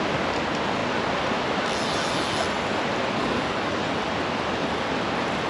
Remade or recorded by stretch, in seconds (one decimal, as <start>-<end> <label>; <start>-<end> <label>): 0.0-3.2 recorded; 3.2-3.9 remade; 3.9-5.5 recorded